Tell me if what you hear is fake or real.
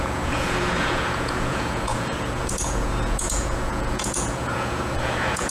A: fake